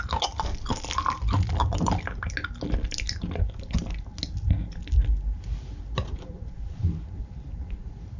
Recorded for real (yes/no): yes